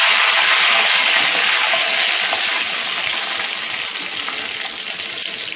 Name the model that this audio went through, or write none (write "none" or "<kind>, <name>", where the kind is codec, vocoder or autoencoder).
none